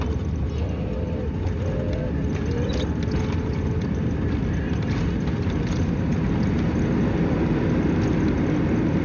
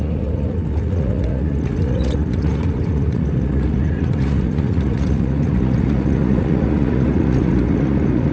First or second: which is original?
first